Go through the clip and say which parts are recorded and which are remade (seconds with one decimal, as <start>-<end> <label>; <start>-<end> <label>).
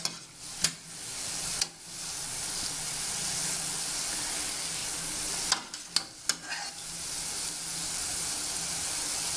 0.0-9.4 recorded